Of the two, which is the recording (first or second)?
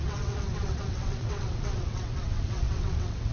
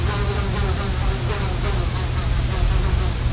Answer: second